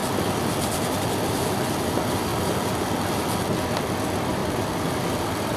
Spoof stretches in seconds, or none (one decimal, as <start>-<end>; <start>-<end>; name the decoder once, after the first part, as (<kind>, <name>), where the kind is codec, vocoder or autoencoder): 4.4-5.0 (vocoder, BigVGAN v2)